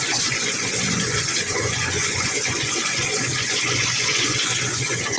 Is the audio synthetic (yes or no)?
yes